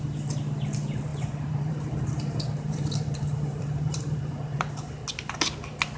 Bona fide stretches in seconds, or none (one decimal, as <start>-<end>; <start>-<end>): 0.0-1.1; 4.7-6.0